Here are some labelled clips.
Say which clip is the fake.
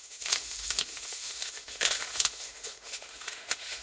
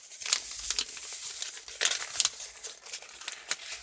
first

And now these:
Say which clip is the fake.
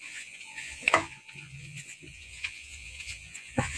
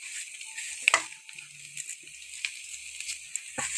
first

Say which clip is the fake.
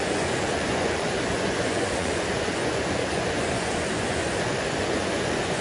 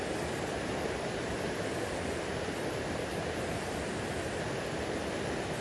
first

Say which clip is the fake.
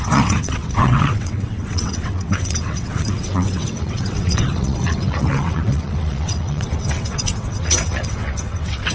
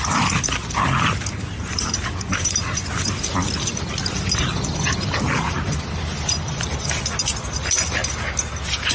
first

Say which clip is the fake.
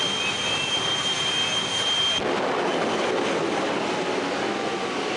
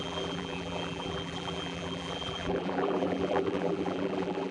second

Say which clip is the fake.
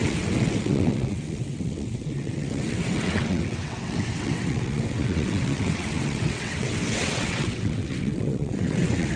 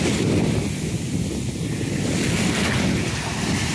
first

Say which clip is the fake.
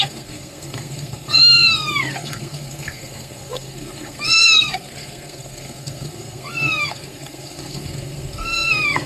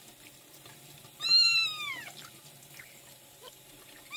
first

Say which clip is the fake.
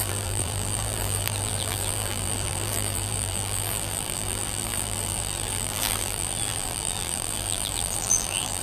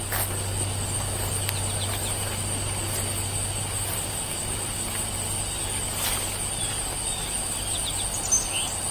first